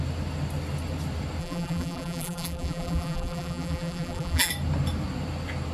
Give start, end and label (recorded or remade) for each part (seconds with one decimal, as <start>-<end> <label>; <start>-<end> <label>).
0.0-1.4 recorded; 1.4-4.5 remade; 4.5-5.7 recorded